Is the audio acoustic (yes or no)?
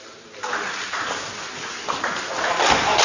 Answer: yes